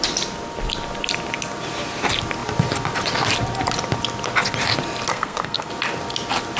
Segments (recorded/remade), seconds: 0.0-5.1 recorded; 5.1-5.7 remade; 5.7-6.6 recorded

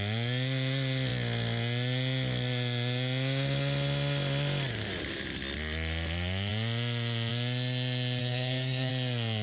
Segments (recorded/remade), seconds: 0.0-8.2 recorded; 8.2-8.9 remade; 8.9-9.4 recorded

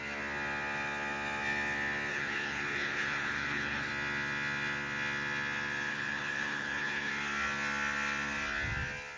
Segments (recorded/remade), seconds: 0.0-2.1 recorded; 2.1-3.9 remade; 3.9-5.9 recorded; 5.9-7.1 remade; 7.1-9.2 recorded